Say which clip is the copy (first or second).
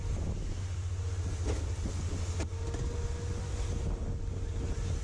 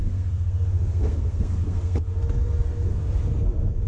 second